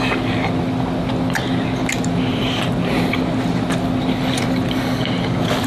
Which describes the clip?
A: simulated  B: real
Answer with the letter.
B